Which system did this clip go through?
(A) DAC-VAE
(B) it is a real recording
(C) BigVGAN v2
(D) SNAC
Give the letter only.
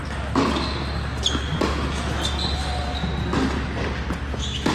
B